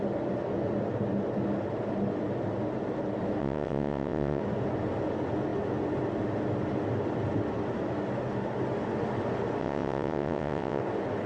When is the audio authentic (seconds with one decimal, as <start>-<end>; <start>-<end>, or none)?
0.0-3.4; 4.4-9.6; 10.8-11.3